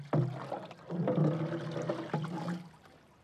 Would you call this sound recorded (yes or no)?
yes